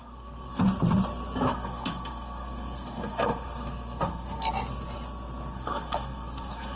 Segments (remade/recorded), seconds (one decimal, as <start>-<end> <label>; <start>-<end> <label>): 0.0-0.6 remade; 0.6-1.5 recorded; 1.5-4.5 remade; 4.5-5.5 recorded; 5.5-6.8 remade